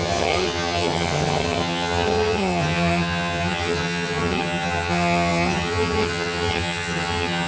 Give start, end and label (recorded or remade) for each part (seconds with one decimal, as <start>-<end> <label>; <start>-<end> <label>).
0.0-7.5 remade